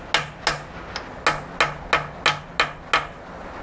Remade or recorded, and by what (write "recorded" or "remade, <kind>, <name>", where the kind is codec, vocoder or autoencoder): recorded